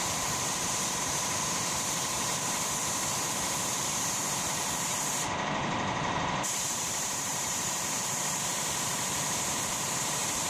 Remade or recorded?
remade